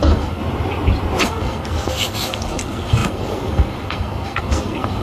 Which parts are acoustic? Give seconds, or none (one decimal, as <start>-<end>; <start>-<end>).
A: 0.4-1.2